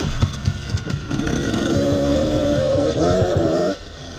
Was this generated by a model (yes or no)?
yes